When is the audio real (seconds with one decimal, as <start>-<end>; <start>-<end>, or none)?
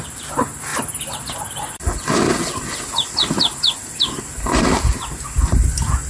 0.0-6.1